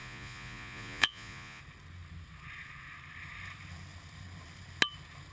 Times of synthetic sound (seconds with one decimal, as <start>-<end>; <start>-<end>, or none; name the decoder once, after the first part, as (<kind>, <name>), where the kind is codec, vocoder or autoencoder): 0.0-1.6 (vocoder, Vocos)